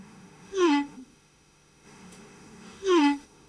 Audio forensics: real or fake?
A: fake